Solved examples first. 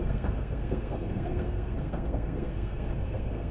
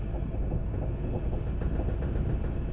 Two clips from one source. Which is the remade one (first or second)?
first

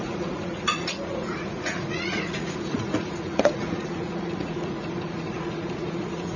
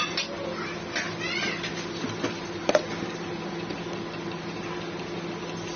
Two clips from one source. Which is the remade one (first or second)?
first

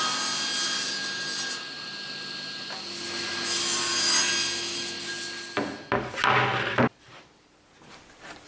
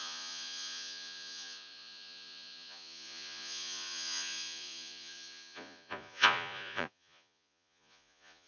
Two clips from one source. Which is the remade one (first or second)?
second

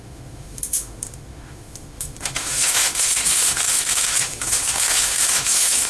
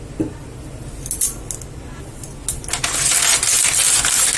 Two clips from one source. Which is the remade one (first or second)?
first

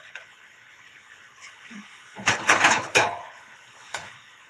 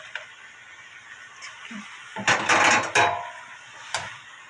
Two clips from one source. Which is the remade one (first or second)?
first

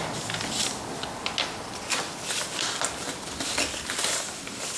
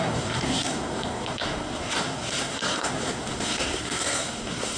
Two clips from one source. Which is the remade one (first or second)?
second